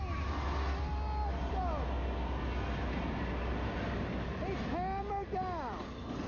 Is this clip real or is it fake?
real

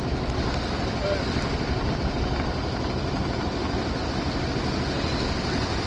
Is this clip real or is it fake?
real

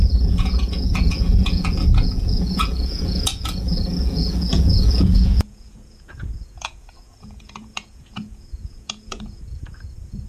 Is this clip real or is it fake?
fake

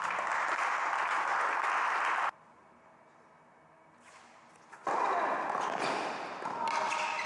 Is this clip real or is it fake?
real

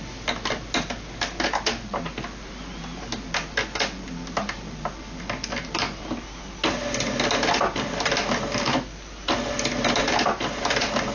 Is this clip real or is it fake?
real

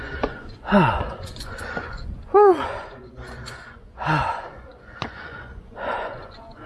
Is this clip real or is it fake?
fake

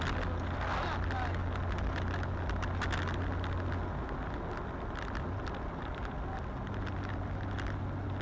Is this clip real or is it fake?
real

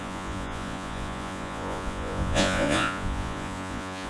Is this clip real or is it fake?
fake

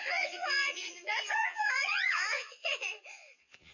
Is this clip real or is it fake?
fake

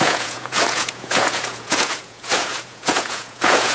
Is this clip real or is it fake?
fake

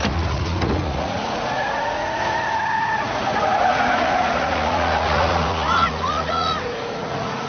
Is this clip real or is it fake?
fake